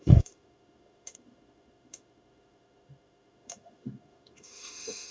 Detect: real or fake fake